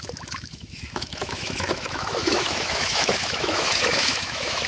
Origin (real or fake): fake